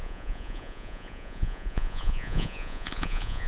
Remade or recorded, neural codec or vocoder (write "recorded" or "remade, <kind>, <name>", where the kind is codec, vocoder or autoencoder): remade, vocoder, Vocos